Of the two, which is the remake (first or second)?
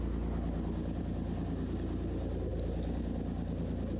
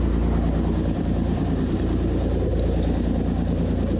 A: second